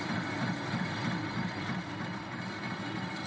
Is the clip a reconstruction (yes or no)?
no